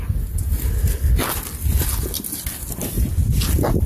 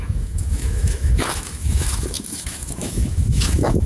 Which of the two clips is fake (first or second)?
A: second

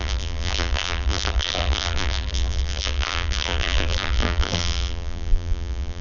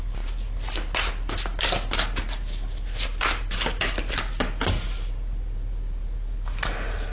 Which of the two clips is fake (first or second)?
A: first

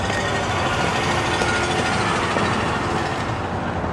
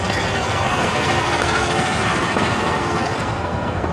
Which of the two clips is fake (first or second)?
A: second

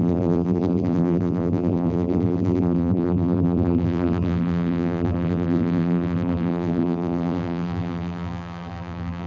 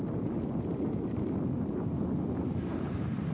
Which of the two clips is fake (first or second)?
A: first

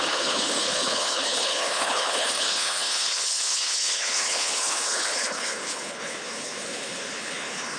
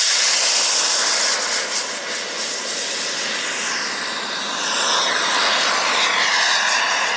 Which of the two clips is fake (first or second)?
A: first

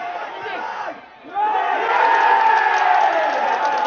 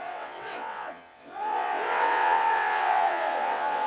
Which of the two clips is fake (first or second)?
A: second